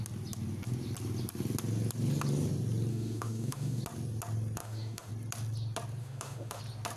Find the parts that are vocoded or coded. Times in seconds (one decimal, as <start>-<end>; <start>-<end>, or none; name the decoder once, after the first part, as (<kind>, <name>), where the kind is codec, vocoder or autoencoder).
2.9-3.8 (autoencoder, DAC-VAE); 4.6-5.1; 6.0-6.6